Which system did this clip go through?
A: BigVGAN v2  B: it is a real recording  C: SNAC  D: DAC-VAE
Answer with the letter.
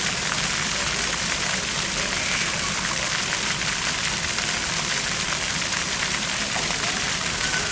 B